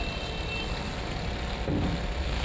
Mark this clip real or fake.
real